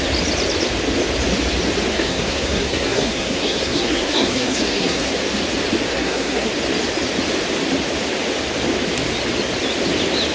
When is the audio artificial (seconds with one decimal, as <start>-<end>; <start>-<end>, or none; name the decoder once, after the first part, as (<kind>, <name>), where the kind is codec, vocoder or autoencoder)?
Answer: 1.9-5.1 (codec, SNAC); 5.9-6.5